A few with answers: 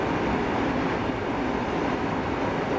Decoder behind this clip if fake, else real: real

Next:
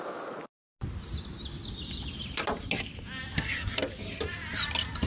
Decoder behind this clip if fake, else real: real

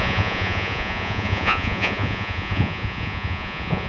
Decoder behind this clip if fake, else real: fake, vocoder, Vocos